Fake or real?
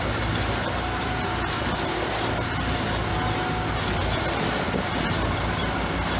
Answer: real